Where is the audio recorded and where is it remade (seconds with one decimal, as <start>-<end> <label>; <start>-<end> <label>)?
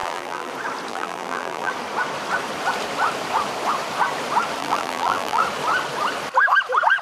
0.0-0.5 remade; 0.5-0.9 recorded; 0.9-1.7 remade; 1.7-4.6 recorded; 4.6-5.4 remade; 5.4-7.0 recorded